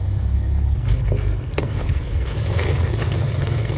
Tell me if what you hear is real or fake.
fake